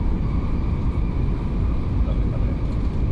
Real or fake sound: real